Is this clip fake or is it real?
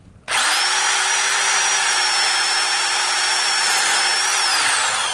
real